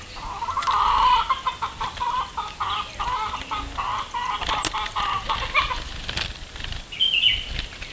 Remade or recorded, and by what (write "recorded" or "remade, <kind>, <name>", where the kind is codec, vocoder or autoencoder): recorded